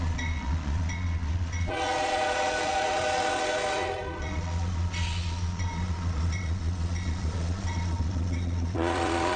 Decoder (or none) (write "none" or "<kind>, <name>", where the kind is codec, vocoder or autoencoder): vocoder, Vocos